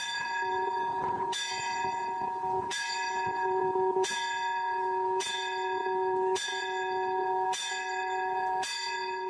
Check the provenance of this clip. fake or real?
fake